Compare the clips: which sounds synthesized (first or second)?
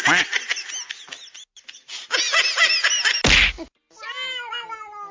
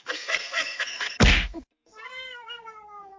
second